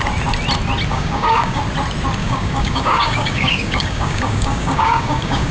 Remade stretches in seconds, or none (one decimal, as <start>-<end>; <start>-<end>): 0.9-1.6; 2.2-5.5